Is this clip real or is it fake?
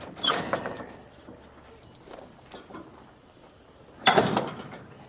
real